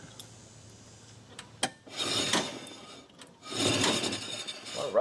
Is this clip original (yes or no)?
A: yes